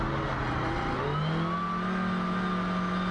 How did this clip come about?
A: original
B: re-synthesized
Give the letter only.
A